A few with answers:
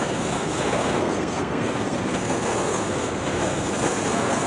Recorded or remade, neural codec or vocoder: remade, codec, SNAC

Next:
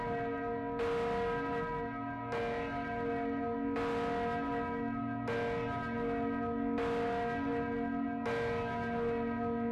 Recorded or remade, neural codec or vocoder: recorded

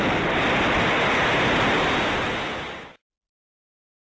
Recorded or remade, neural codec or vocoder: recorded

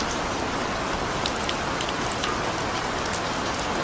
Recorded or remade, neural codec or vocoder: recorded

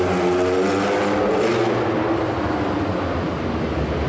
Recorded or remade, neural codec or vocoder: recorded